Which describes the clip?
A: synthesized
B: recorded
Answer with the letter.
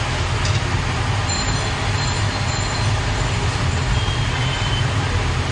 B